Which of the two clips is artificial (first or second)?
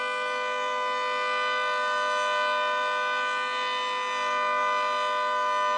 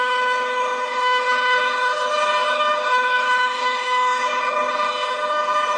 second